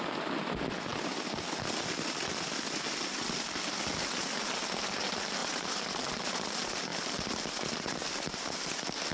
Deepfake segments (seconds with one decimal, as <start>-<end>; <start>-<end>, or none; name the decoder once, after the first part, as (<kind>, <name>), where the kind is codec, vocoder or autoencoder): 5.4-6.4 (vocoder, BigVGAN v2)